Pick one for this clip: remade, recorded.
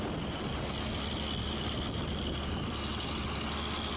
recorded